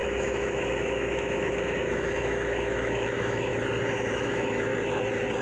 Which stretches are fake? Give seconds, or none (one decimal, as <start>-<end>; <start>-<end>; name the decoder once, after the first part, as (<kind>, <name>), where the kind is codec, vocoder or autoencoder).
0.0-3.5 (autoencoder, DAC-VAE); 4.1-4.7